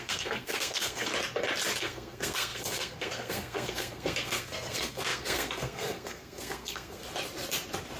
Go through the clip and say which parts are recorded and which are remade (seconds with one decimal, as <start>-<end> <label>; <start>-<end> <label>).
0.0-1.1 remade; 1.1-1.8 recorded; 1.8-7.0 remade; 7.0-8.0 recorded